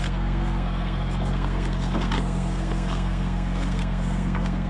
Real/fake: fake